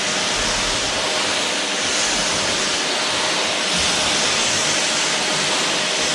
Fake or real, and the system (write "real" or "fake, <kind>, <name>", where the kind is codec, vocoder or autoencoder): real